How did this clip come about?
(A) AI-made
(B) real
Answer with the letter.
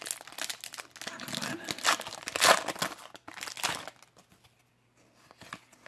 B